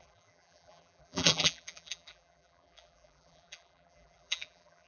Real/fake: fake